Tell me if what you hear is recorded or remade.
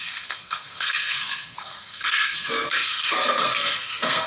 remade